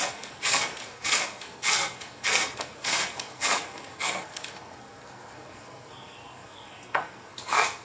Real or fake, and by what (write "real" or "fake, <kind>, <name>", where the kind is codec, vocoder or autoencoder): fake, codec, SNAC